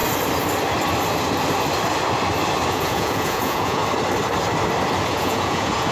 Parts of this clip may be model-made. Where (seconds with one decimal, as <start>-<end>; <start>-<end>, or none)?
2.7-3.8; 5.1-5.9